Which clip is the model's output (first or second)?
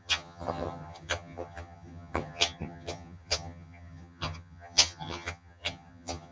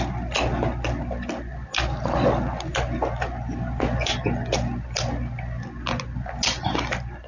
first